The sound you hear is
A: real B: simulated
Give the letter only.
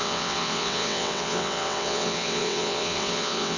B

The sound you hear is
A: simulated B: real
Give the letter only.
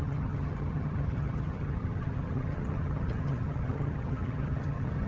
A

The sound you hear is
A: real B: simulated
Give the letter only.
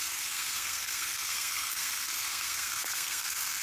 B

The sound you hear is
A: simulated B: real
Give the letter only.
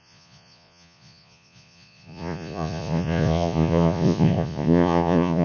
A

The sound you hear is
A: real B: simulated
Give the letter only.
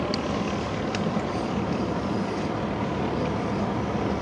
A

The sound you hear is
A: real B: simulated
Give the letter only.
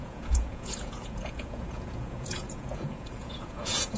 B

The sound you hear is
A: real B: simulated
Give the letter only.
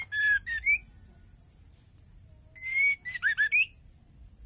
A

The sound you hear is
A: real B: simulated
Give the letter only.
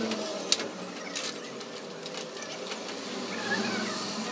A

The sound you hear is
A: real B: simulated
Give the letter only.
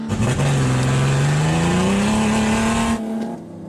A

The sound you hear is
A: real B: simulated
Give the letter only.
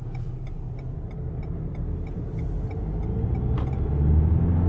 A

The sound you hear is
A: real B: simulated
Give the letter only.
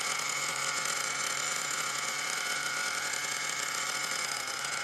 B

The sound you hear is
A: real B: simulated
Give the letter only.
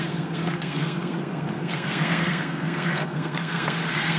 B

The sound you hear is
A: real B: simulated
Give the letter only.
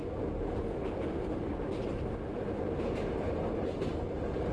A